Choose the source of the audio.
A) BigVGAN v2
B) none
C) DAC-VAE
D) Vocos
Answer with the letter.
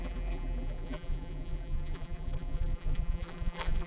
A